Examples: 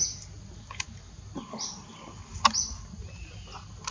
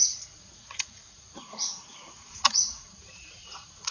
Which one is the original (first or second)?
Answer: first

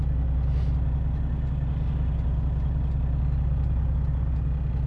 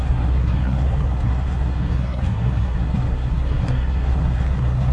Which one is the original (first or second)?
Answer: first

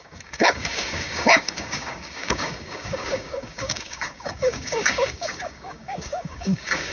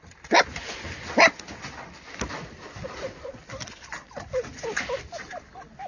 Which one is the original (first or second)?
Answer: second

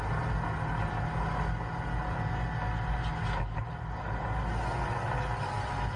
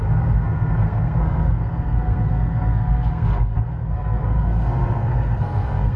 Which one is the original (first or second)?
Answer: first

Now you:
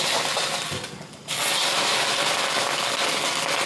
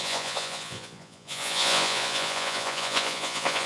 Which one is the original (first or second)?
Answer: first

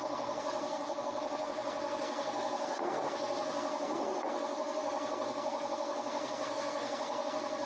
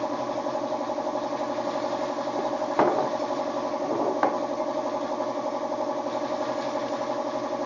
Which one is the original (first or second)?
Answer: second